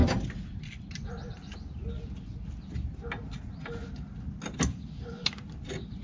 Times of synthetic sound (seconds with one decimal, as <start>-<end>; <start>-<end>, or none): none